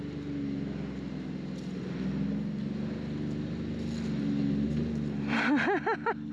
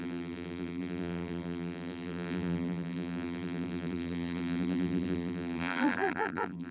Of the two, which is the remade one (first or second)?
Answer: second